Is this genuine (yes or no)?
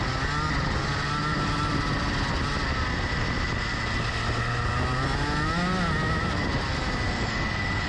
yes